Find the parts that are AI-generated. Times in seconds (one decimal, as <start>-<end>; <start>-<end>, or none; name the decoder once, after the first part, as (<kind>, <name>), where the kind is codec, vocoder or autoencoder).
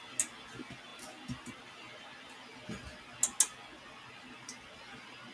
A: none